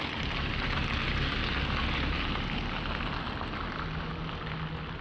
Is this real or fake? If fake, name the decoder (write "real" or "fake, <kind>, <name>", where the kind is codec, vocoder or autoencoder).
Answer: real